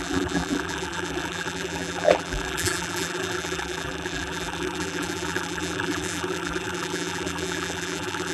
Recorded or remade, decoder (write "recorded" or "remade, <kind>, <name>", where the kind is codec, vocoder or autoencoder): remade, vocoder, BigVGAN v2